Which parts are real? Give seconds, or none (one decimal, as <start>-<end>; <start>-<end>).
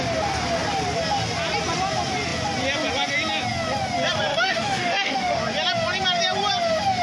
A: 0.0-4.3; 5.4-7.0